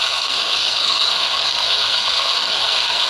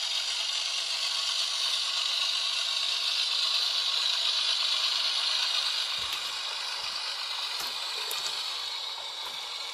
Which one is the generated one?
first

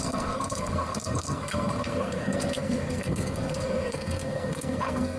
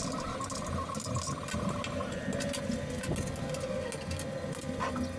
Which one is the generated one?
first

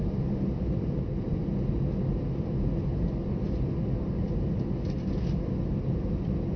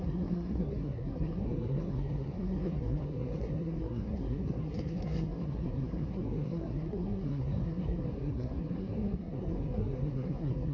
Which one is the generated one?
second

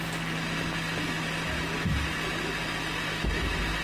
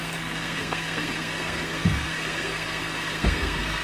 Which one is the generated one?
second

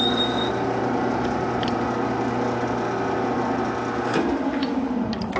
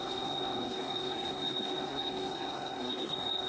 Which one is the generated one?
second